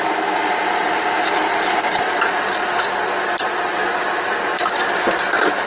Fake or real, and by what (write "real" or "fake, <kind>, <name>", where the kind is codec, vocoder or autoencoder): real